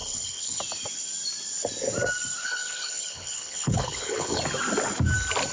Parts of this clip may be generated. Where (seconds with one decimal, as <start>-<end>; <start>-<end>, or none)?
0.0-0.6; 2.4-4.4